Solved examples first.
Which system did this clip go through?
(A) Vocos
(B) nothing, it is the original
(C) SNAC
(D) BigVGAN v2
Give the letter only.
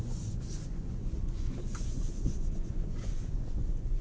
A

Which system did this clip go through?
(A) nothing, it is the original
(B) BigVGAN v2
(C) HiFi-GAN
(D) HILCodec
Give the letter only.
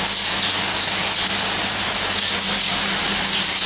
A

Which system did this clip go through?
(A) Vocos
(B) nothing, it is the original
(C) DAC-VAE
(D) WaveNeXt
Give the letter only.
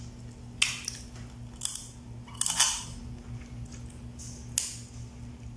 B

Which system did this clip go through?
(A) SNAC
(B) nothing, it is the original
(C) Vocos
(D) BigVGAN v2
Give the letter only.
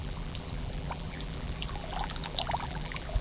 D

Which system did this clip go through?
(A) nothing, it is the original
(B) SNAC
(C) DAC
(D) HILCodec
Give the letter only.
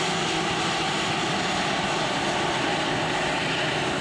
A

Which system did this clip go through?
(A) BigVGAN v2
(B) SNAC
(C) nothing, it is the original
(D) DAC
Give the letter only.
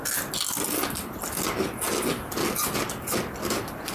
C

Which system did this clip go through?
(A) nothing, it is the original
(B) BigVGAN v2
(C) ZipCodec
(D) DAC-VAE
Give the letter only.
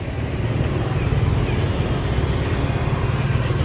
A